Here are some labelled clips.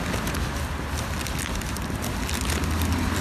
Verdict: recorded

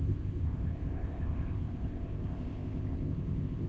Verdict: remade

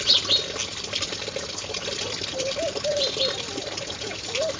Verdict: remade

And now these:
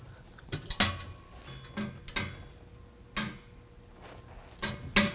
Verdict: recorded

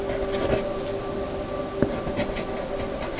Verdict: recorded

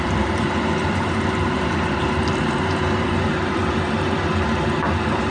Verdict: remade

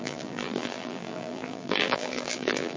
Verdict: remade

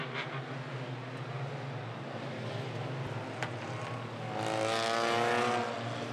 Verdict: recorded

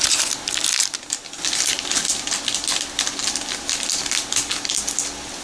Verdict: recorded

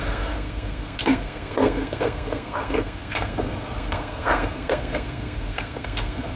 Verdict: remade